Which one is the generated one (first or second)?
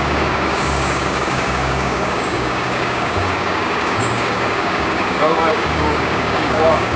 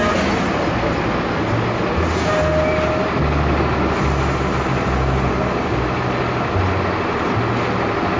first